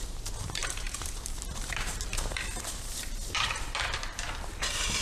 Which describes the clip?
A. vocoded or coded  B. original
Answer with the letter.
A